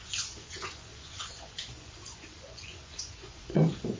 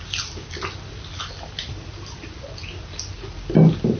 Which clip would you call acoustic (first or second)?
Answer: second